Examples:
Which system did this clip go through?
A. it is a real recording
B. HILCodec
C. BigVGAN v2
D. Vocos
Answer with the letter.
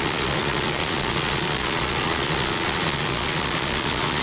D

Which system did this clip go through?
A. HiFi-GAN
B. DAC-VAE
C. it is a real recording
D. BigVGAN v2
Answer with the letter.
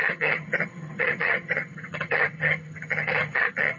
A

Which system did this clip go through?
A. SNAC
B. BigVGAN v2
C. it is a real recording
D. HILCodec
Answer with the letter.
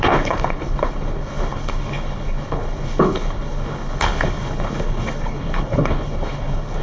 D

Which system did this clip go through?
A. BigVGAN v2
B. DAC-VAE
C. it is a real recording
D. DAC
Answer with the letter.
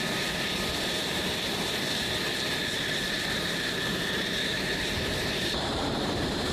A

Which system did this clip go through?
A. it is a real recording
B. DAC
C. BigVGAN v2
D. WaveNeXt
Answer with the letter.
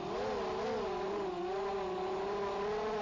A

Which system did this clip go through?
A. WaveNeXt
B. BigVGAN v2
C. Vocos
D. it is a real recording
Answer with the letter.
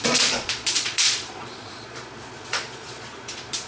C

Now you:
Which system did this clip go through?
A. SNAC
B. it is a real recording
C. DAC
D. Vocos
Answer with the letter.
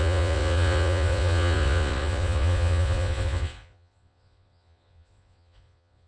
D